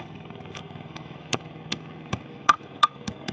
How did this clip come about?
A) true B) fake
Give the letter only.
B